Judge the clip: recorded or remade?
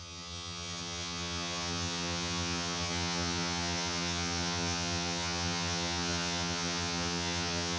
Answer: remade